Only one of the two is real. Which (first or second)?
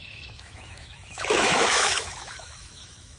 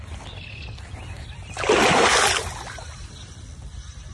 second